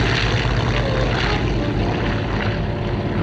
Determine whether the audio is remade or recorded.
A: recorded